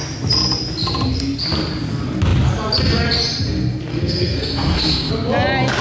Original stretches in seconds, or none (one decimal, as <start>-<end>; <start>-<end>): 0.0-3.9; 5.1-5.8